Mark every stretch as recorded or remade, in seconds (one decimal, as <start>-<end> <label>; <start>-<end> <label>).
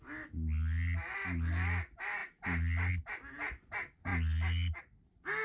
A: 0.0-5.4 recorded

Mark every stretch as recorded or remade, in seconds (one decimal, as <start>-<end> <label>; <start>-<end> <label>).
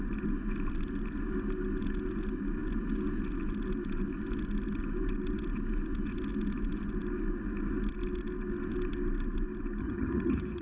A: 0.0-9.8 recorded; 9.8-10.6 remade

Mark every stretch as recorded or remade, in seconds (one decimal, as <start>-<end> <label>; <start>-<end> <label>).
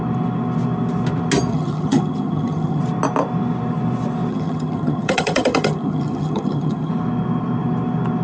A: 0.0-1.5 recorded; 1.5-2.8 remade; 2.8-4.3 recorded; 4.3-6.9 remade; 6.9-8.2 recorded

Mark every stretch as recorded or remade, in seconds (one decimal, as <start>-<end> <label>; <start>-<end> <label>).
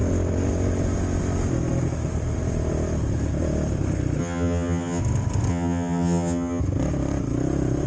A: 0.0-4.2 recorded; 4.2-5.0 remade; 5.0-5.5 recorded; 5.5-6.6 remade; 6.6-7.9 recorded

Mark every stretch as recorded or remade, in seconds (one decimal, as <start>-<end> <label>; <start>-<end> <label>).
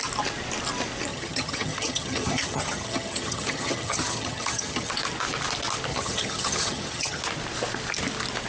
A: 0.0-1.1 recorded; 1.1-4.9 remade; 4.9-5.9 recorded; 5.9-7.2 remade; 7.2-8.5 recorded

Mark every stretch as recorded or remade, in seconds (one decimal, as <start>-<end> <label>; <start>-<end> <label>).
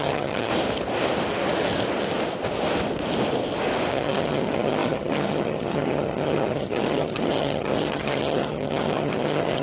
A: 0.0-0.5 remade; 0.5-3.9 recorded; 3.9-9.6 remade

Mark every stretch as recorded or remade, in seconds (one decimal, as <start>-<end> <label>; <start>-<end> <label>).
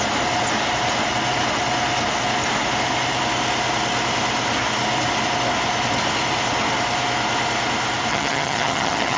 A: 0.0-8.1 recorded; 8.1-9.2 remade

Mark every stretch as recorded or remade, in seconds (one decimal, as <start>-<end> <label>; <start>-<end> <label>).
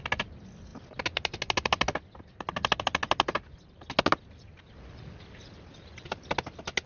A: 0.0-6.9 recorded